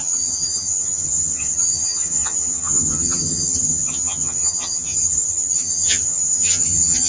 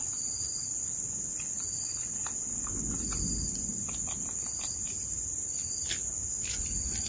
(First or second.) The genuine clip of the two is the second